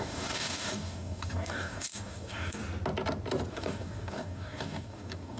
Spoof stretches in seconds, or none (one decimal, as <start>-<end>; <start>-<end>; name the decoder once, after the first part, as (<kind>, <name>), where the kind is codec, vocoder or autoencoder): 0.0-2.6 (codec, DAC); 3.5-5.4